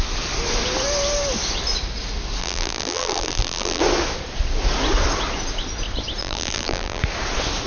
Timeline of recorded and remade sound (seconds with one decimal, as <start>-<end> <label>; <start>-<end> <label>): 0.0-2.4 recorded; 2.4-3.8 remade; 3.8-6.2 recorded; 6.2-7.0 remade; 7.0-7.7 recorded